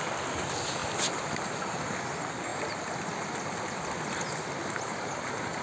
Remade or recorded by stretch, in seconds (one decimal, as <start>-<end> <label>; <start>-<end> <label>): 0.0-5.6 recorded